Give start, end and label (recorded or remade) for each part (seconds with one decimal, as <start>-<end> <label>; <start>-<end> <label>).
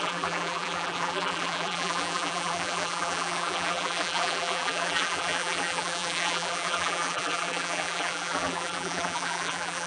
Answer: 0.0-9.9 remade